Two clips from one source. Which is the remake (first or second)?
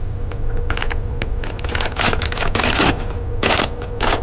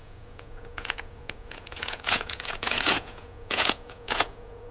second